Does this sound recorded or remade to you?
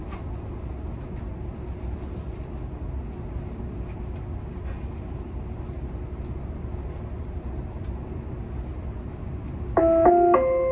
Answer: recorded